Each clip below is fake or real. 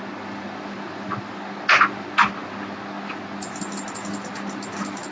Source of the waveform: real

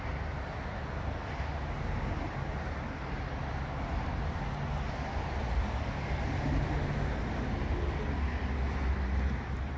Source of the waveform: real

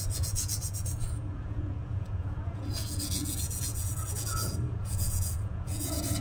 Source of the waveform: fake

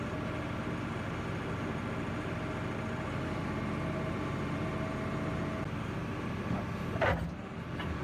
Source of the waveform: real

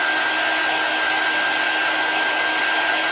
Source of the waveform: real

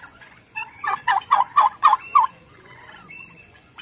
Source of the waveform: fake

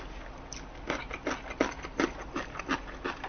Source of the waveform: real